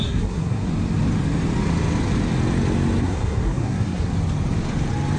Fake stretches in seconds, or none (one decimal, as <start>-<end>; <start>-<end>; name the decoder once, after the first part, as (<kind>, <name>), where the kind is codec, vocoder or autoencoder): 0.0-0.7 (codec, SNAC); 3.0-4.1